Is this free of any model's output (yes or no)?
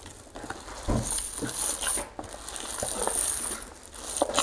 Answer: yes